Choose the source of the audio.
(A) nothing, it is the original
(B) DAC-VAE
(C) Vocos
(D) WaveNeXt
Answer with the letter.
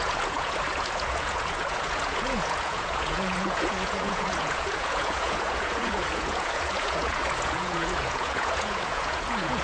C